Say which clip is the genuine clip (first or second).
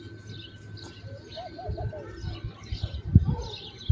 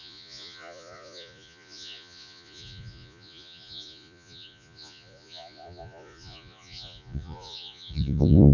first